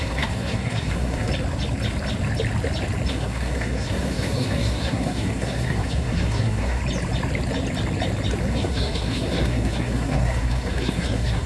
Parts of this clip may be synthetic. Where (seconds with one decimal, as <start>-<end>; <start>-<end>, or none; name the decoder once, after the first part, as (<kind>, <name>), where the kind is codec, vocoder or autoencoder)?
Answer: 0.0-1.3 (codec, SNAC); 3.1-6.8; 8.4-11.5